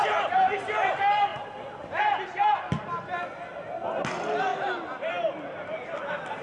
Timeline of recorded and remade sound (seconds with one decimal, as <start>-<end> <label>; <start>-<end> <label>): 0.0-6.4 recorded